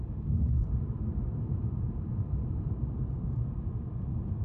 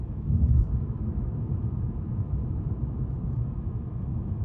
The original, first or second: first